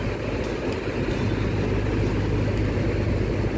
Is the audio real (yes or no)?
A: yes